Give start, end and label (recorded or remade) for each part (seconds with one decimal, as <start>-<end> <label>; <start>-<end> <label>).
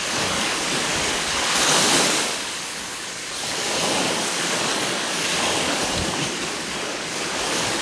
0.0-7.8 remade